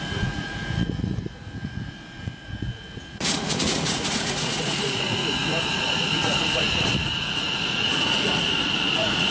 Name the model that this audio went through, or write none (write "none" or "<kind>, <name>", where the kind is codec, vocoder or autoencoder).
vocoder, Vocos